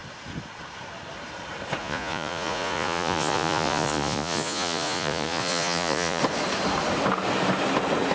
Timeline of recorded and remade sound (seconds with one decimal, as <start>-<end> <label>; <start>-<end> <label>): 0.0-1.8 recorded; 1.8-6.2 remade; 6.2-8.1 recorded